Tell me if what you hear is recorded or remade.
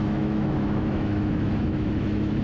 remade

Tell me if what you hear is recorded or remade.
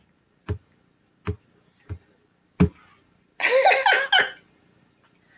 recorded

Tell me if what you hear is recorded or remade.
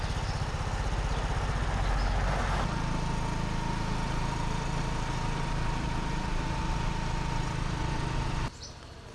recorded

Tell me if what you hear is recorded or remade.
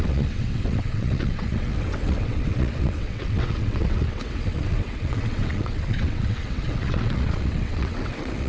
remade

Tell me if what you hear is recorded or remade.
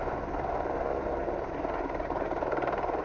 recorded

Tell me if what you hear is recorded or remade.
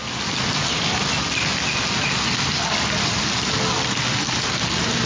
recorded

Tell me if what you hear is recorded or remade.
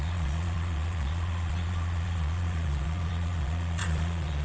remade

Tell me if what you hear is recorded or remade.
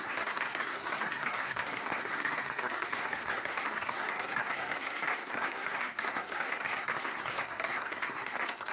remade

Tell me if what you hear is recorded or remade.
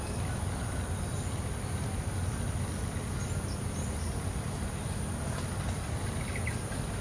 recorded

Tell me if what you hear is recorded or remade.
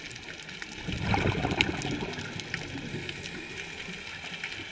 recorded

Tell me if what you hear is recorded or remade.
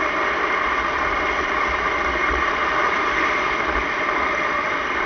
recorded